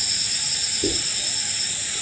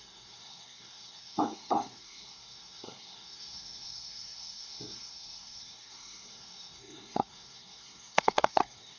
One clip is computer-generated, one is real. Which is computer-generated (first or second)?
second